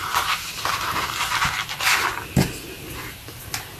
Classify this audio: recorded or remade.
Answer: recorded